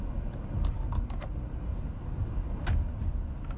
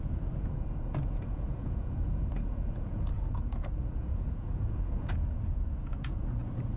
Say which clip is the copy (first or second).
second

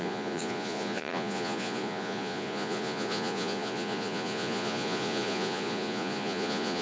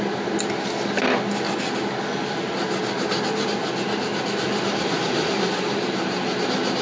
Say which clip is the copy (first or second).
first